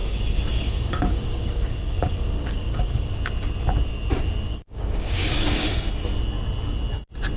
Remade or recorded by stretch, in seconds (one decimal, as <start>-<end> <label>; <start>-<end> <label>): 0.0-3.2 remade; 3.2-4.5 recorded; 4.5-5.6 remade; 5.6-7.4 recorded